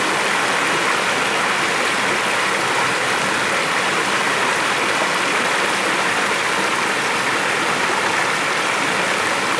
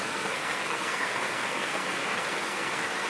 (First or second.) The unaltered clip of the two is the first